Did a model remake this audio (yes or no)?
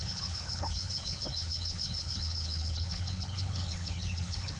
yes